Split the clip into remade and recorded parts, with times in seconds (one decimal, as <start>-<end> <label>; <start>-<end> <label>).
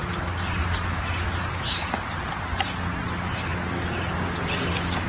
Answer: 0.0-5.1 recorded